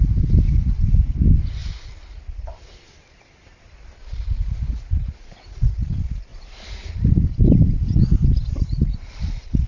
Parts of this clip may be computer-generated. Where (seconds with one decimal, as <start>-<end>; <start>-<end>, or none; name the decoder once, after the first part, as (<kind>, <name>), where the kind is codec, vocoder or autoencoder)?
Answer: none